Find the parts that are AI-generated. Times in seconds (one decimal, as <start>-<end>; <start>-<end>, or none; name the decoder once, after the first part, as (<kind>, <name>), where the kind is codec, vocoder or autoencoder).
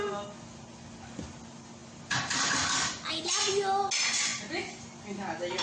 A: none